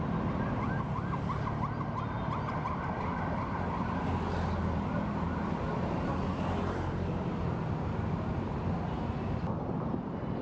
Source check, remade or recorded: recorded